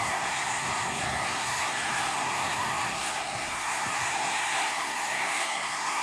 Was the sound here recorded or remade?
remade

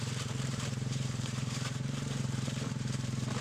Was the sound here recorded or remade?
remade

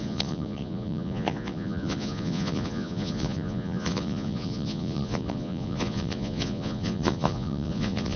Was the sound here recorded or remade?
remade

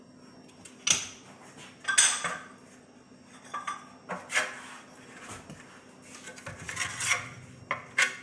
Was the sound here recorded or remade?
recorded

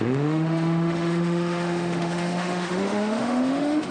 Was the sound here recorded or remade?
remade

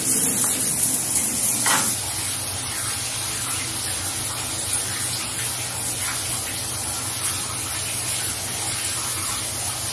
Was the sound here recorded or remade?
recorded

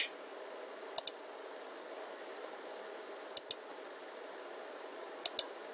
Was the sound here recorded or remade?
recorded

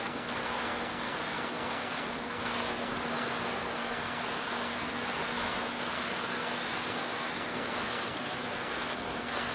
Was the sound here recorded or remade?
remade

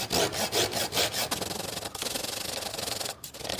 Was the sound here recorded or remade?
recorded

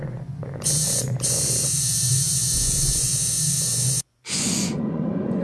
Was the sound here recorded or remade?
remade